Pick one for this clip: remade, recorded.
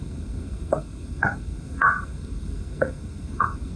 remade